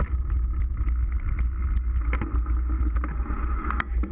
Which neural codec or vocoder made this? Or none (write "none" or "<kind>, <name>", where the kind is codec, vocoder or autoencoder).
none